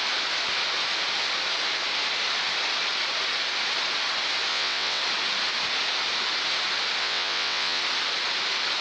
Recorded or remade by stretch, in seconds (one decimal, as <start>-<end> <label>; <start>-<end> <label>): 0.0-4.5 recorded; 4.5-5.0 remade; 5.0-7.0 recorded; 7.0-7.8 remade; 7.8-8.8 recorded